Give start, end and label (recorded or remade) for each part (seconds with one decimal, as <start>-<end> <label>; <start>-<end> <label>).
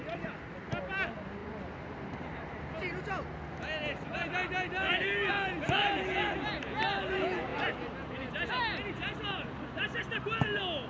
0.0-10.9 recorded